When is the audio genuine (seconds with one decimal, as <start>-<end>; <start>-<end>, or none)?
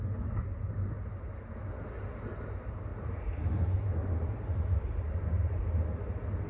0.0-2.9; 3.6-4.0; 5.6-6.5